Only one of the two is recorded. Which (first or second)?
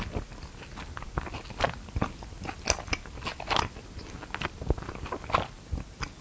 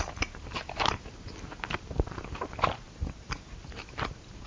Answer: first